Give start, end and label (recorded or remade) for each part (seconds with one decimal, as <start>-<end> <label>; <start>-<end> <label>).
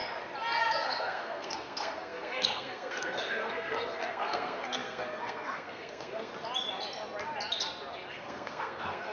0.0-0.6 recorded; 0.6-6.3 remade; 6.3-8.1 recorded; 8.1-9.1 remade